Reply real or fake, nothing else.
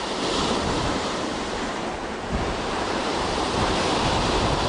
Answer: fake